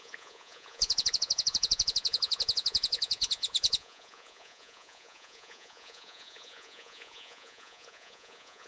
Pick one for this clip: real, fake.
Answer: fake